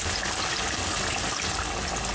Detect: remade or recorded recorded